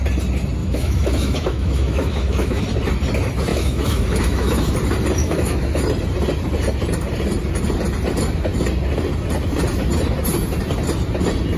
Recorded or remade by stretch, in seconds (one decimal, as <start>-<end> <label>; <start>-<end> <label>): 0.0-0.6 recorded; 0.6-2.6 remade; 2.6-3.5 recorded; 3.5-4.7 remade; 4.7-5.2 recorded; 5.2-5.7 remade; 5.7-11.6 recorded